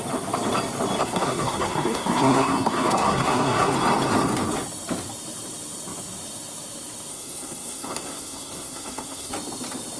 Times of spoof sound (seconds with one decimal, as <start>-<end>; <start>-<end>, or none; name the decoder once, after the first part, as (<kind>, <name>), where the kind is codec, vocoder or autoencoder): 1.0-3.7 (codec, SNAC); 7.1-9.3